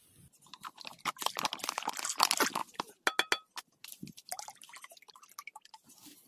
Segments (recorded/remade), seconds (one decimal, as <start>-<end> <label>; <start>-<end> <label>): 0.0-6.3 recorded